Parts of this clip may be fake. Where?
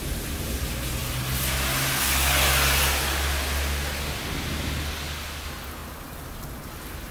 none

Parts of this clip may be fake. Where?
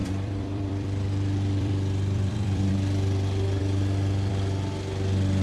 0.0-2.7 (vocoder, BigVGAN v2)